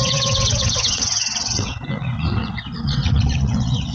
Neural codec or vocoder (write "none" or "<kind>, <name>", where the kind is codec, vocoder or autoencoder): vocoder, WaveNeXt